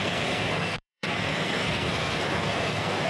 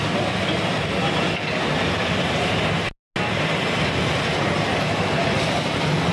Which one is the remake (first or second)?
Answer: first